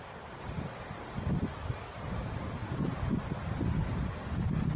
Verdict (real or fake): real